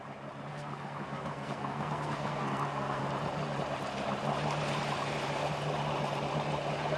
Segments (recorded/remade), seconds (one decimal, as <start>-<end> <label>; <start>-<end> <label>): 0.0-0.5 recorded; 0.5-3.0 remade; 3.0-7.0 recorded